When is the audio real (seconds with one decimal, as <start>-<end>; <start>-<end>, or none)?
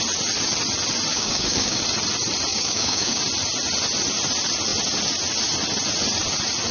0.0-1.1; 1.8-2.5; 3.2-6.7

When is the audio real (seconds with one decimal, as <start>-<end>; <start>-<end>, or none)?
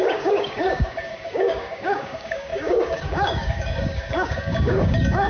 none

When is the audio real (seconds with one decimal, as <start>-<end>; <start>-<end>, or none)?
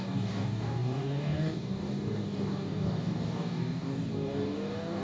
none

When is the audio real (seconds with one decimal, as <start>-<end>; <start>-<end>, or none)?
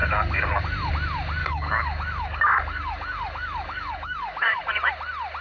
0.9-1.4; 4.6-5.4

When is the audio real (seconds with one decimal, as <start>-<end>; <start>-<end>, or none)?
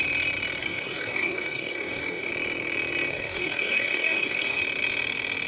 0.0-0.6; 2.3-3.1; 4.6-5.5